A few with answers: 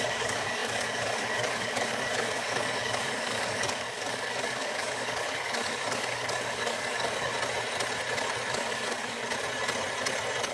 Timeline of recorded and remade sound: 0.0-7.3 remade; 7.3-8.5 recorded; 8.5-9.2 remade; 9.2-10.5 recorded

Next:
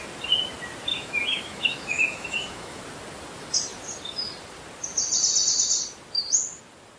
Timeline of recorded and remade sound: 0.0-0.9 recorded; 0.9-2.8 remade; 2.8-7.0 recorded

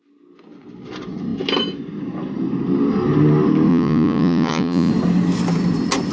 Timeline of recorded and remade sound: 0.0-3.7 recorded; 3.7-4.9 remade; 4.9-6.1 recorded

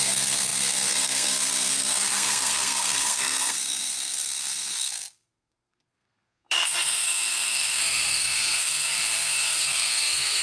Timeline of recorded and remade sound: 0.0-10.4 remade

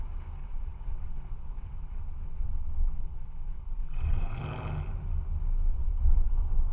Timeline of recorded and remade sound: 0.0-0.4 recorded; 0.4-4.4 remade; 4.4-5.7 recorded; 5.7-6.7 remade